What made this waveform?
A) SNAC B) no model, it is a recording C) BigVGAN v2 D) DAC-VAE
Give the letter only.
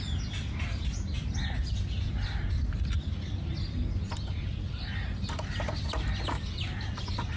B